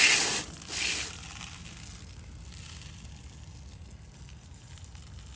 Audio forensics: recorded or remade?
recorded